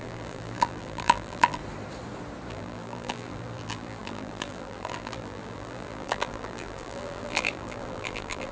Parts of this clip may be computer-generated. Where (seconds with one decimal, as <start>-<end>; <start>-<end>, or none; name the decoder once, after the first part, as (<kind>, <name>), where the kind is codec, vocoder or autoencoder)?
0.0-1.6 (vocoder, BigVGAN v2); 2.5-8.5